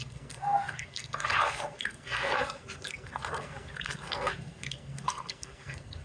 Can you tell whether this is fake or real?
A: fake